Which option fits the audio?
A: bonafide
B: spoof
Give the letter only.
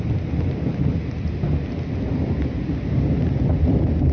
A